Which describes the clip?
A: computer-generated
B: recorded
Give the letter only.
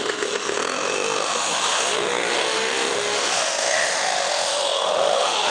A